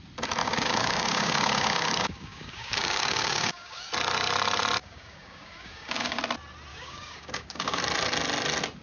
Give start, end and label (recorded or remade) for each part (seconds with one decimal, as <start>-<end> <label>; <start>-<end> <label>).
0.0-0.4 recorded; 0.4-3.9 remade; 3.9-4.8 recorded; 4.8-6.2 remade; 6.2-6.7 recorded; 6.7-7.8 remade; 7.8-8.8 recorded